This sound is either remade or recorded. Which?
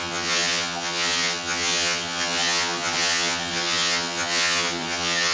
remade